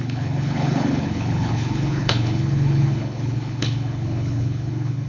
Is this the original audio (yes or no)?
no